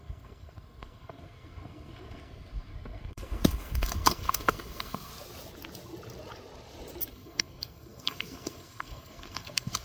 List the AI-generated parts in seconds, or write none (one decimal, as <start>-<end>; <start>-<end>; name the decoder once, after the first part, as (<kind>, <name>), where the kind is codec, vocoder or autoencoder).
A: 0.0-5.1 (codec, SNAC); 7.1-9.8